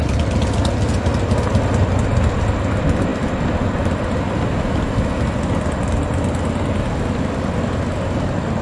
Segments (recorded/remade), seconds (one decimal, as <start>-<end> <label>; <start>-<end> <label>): 0.0-8.6 recorded